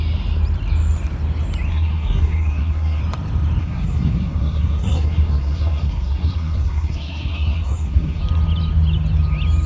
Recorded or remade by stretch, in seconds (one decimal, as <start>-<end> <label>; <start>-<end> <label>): 0.0-1.7 recorded; 1.7-3.0 remade; 3.0-3.6 recorded; 3.6-8.2 remade; 8.2-9.7 recorded